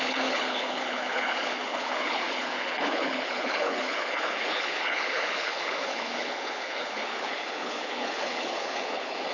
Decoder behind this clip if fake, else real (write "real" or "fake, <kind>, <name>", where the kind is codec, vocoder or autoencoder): fake, codec, HILCodec